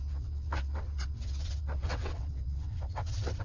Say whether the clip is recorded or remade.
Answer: remade